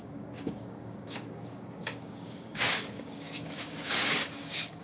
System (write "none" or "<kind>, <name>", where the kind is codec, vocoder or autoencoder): codec, DAC